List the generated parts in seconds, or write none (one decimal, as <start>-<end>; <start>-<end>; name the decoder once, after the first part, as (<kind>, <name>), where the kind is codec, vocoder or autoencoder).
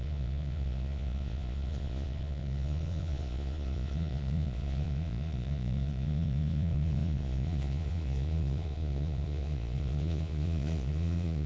0.0-11.5 (vocoder, Vocos)